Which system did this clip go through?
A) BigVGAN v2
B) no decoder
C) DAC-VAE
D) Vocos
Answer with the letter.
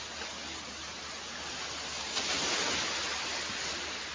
B